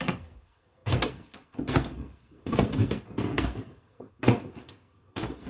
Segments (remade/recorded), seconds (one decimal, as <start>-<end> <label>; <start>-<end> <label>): 0.0-5.5 remade

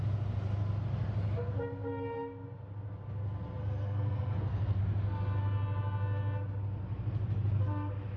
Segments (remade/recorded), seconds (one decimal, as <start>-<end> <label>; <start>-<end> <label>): 0.0-3.6 recorded; 3.6-4.8 remade; 4.8-8.2 recorded

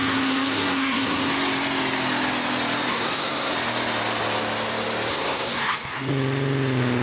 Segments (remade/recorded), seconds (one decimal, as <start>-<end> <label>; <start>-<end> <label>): 0.0-1.3 remade; 1.3-2.9 recorded; 2.9-3.5 remade; 3.5-5.1 recorded; 5.1-6.1 remade; 6.1-7.0 recorded

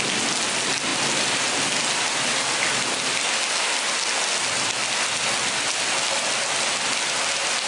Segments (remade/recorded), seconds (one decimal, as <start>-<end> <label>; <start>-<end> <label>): 0.0-7.7 recorded

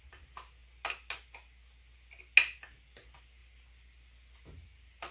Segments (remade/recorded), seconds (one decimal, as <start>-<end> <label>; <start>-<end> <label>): 0.0-5.1 recorded

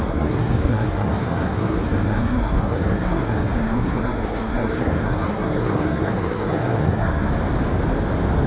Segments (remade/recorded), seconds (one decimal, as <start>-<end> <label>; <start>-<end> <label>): 0.0-7.3 remade; 7.3-8.5 recorded

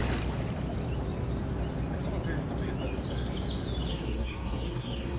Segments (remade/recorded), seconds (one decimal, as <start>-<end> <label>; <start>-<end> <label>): 0.0-3.9 recorded; 3.9-5.2 remade